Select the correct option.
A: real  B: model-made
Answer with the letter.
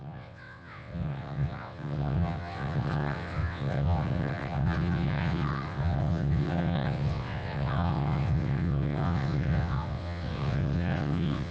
B